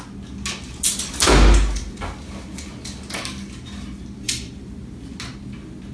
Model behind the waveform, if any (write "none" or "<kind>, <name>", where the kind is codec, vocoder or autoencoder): none